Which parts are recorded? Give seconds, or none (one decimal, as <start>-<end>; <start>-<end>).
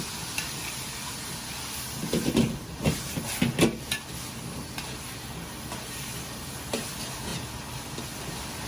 0.0-8.7